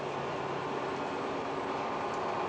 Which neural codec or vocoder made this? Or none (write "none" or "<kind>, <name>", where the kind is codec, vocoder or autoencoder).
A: none